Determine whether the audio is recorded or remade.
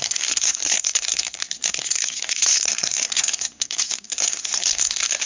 remade